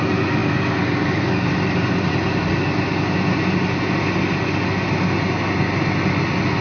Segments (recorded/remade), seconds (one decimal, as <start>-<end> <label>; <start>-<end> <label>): 0.0-6.6 recorded